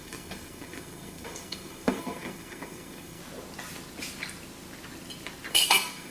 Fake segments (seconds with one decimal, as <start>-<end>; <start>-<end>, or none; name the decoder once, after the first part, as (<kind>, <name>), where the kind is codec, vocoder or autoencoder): 0.0-3.2 (codec, SNAC); 5.5-6.1